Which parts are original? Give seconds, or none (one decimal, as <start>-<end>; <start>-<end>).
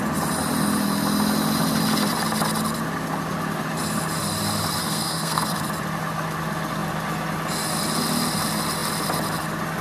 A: 0.0-4.8; 5.6-9.8